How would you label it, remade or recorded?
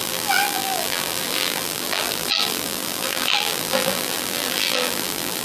remade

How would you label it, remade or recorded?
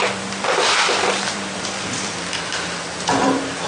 remade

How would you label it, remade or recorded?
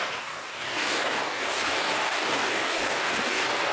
remade